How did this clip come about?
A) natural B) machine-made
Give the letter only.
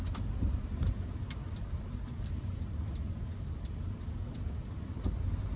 A